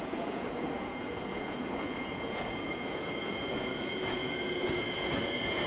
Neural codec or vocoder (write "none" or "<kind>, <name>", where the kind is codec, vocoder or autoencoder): vocoder, Vocos